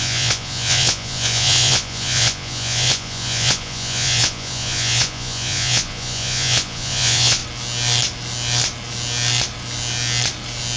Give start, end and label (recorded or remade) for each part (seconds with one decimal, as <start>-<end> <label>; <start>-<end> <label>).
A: 0.0-7.4 remade; 7.4-10.8 recorded